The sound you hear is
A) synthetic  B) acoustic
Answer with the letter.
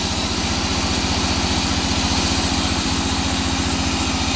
B